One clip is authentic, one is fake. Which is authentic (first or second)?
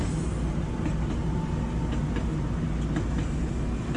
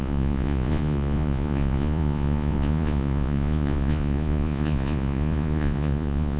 first